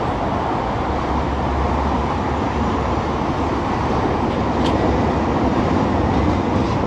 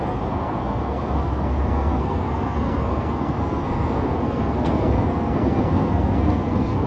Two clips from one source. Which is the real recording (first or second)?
first